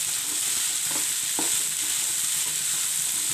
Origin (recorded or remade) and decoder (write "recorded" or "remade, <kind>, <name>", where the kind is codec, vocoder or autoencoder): recorded